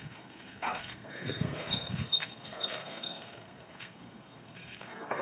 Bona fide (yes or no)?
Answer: no